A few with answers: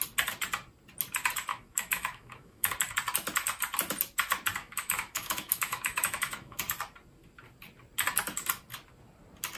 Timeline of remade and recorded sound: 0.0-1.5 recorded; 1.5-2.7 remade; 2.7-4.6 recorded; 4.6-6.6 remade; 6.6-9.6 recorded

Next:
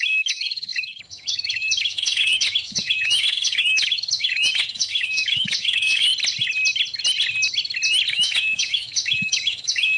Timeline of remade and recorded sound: 0.0-6.1 remade; 6.1-8.1 recorded; 8.1-10.0 remade

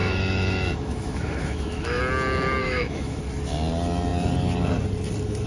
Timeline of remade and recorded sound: 0.0-2.0 remade; 2.0-2.6 recorded; 2.6-3.2 remade; 3.2-5.5 recorded

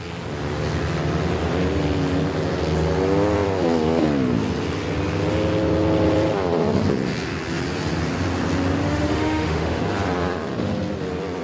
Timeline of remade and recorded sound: 0.0-8.8 recorded; 8.8-9.8 remade; 9.8-11.4 recorded

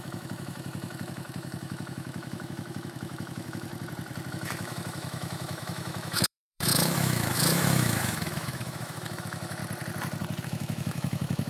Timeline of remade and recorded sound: 0.0-3.7 remade; 3.7-4.3 recorded; 4.3-9.6 remade; 9.6-10.4 recorded; 10.4-11.5 remade